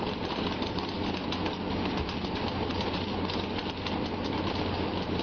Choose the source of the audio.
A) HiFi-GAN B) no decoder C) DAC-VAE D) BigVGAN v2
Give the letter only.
B